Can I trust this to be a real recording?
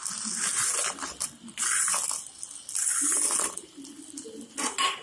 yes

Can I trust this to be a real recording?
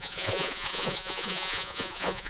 no